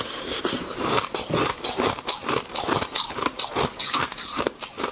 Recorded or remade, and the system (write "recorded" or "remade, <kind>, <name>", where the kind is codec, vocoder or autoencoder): remade, vocoder, BigVGAN v2